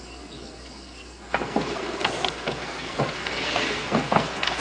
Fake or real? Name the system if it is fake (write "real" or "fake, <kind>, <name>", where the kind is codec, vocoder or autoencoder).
fake, codec, SNAC